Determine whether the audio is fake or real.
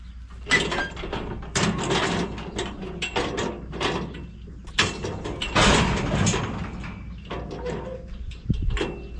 real